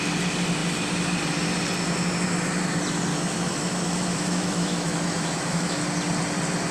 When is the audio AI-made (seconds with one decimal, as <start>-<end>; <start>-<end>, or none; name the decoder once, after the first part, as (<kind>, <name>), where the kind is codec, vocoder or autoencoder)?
3.1-5.8 (autoencoder, DAC-VAE)